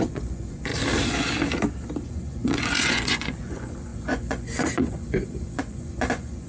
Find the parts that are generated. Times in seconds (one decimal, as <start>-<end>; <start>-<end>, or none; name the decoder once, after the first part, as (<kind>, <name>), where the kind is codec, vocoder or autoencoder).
0.0-0.7 (vocoder, Vocos); 2.1-6.5